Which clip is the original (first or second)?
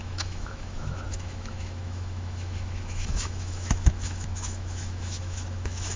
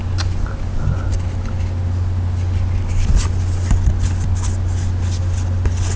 second